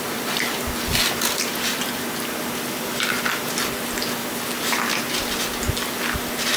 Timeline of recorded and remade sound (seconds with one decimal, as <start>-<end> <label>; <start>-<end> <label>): 0.0-6.6 recorded